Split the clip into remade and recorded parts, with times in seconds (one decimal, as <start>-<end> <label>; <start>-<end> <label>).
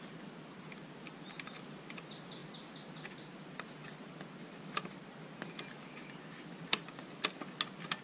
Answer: 0.0-8.0 recorded